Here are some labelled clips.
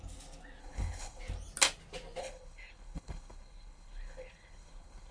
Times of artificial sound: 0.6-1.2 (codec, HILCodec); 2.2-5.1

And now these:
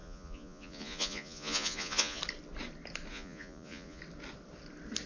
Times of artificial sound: 0.0-2.2 (vocoder, Vocos); 3.1-4.0

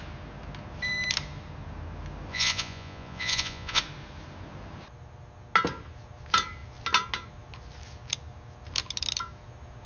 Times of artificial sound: 2.3-3.8 (vocoder, Vocos)

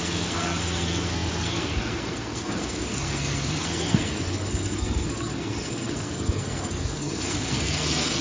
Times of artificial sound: 0.0-8.2 (codec, SNAC)